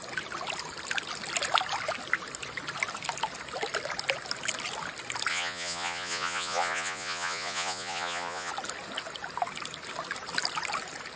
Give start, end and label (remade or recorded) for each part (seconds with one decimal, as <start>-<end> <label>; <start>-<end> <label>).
0.0-5.3 recorded; 5.3-8.5 remade; 8.5-11.2 recorded